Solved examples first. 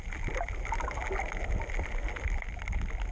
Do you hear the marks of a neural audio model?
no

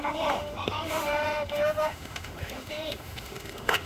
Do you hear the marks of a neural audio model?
yes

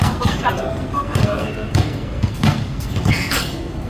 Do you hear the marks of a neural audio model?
yes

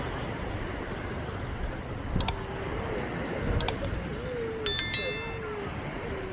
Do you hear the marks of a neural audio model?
no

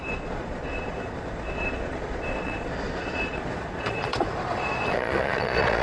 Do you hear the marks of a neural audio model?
yes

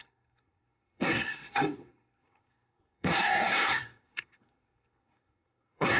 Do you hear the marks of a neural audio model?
yes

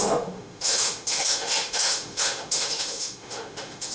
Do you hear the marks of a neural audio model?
yes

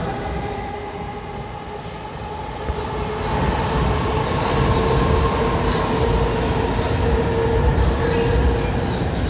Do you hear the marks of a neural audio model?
no